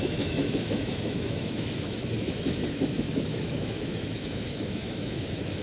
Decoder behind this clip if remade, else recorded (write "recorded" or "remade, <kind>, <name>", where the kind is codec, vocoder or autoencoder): remade, autoencoder, DAC-VAE